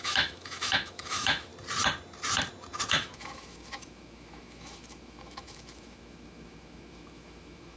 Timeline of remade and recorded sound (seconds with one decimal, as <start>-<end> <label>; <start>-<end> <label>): 0.0-1.5 remade; 1.5-2.9 recorded; 2.9-7.8 remade